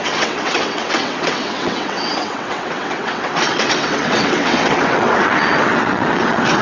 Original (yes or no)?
no